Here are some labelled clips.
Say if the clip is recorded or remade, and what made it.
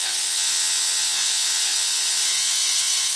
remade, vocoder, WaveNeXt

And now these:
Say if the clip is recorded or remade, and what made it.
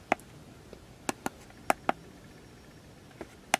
recorded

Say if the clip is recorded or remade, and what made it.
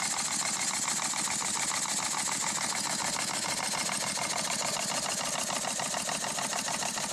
recorded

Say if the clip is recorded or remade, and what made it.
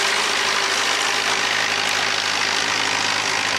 recorded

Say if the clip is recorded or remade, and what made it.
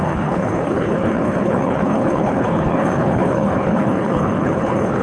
remade, codec, HILCodec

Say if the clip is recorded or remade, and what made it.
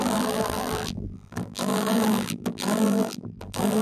remade, vocoder, BigVGAN v2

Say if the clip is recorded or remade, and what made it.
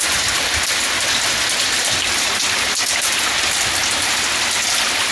recorded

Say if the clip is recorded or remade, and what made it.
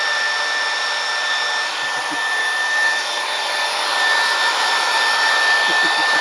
recorded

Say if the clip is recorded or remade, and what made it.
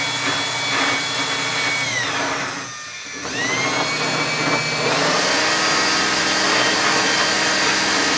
recorded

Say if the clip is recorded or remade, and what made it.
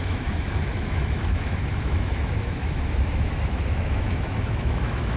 remade, autoencoder, DAC-VAE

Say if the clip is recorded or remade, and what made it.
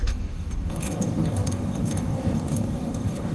remade, codec, DAC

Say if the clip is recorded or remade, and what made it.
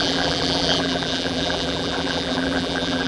remade, vocoder, BigVGAN v2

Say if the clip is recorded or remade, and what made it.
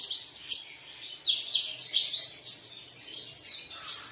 recorded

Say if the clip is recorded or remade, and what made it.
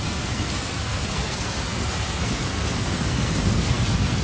remade, codec, SNAC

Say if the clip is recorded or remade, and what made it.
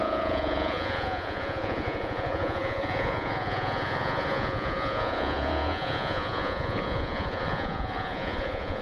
remade, vocoder, Vocos